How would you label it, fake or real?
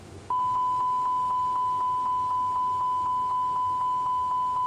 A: real